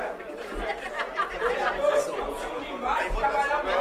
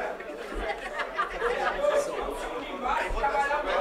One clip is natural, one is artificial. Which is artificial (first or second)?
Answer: second